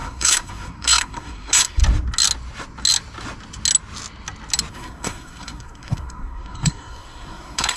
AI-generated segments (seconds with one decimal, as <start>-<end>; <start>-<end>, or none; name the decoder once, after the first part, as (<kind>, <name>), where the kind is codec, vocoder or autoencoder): 0.0-1.8 (codec, SNAC); 4.7-7.8